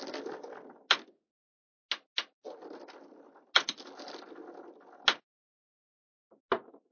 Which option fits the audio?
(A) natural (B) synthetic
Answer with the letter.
A